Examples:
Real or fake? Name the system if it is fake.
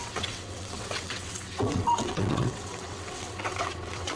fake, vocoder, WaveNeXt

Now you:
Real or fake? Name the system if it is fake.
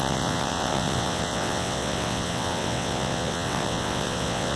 fake, vocoder, WaveNeXt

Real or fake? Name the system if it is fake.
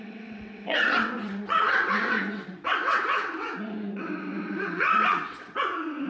fake, vocoder, WaveNeXt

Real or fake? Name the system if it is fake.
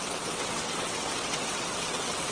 fake, vocoder, WaveNeXt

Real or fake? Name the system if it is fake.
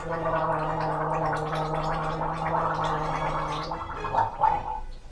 real